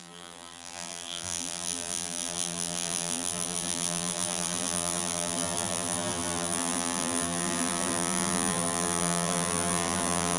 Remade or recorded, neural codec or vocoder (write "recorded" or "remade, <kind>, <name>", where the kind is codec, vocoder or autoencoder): remade, vocoder, BigVGAN v2